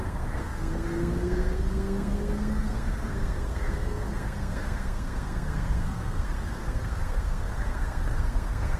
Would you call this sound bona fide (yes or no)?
no